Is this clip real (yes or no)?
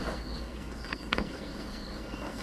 no